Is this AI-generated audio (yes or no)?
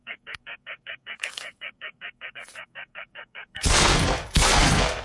yes